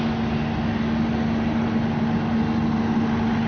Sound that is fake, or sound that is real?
real